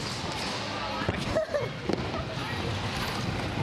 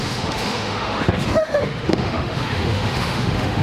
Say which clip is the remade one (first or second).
second